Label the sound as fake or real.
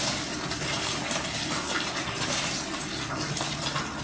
real